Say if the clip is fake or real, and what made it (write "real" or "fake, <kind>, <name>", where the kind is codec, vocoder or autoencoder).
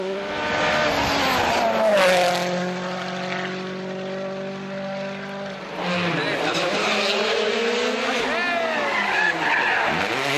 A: real